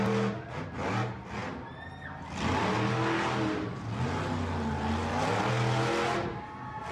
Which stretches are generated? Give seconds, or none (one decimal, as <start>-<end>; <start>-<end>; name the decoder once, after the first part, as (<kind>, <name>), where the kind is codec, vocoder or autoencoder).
none